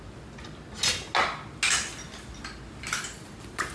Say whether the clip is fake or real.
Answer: real